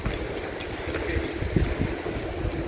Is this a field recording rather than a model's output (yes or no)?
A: yes